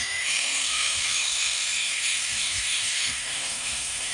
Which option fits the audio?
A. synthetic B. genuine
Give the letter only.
A